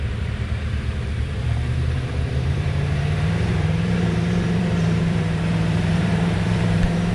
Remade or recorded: remade